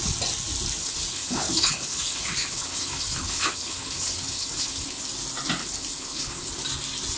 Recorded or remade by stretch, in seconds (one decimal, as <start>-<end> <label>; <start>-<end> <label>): 0.0-0.8 recorded; 0.8-5.0 remade; 5.0-5.6 recorded; 5.6-6.5 remade; 6.5-7.2 recorded